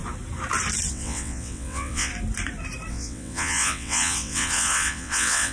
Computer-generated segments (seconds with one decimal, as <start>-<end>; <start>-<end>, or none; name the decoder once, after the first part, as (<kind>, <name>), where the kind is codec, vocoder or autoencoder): 0.9-2.1 (vocoder, WaveNeXt); 2.9-5.5